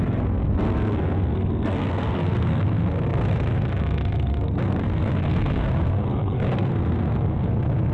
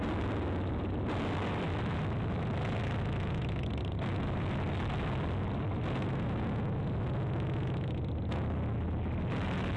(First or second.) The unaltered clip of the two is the second